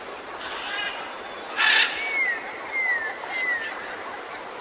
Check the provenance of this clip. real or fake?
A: real